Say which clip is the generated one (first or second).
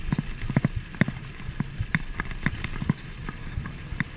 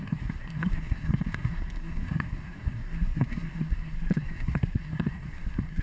second